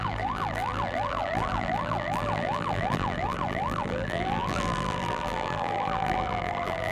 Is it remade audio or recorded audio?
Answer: remade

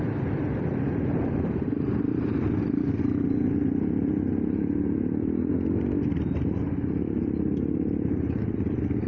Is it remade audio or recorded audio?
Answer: recorded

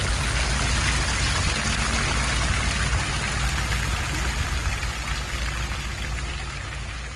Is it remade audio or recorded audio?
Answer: recorded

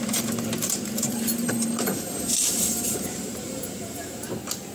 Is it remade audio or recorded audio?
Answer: remade